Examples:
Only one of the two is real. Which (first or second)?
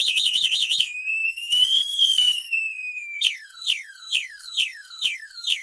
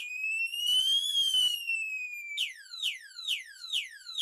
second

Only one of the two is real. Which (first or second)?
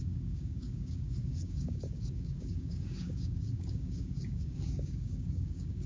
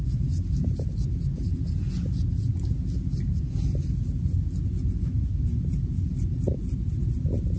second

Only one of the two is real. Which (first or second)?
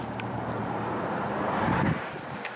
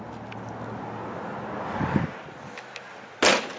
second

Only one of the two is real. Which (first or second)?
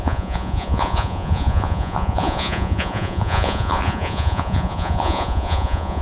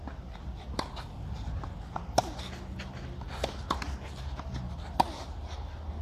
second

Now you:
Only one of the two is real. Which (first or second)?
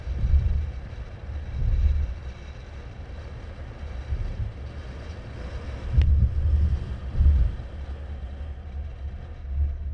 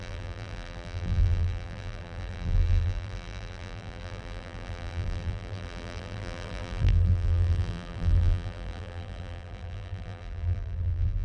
first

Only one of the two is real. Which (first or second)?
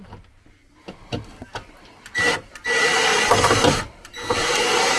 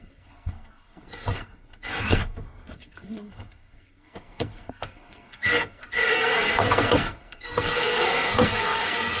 first